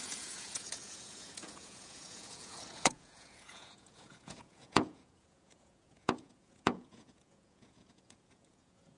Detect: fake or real fake